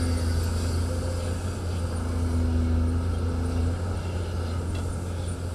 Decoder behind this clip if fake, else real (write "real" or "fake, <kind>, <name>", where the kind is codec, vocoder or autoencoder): real